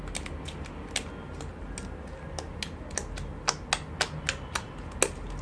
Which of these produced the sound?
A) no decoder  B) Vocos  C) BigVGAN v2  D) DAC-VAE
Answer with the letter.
A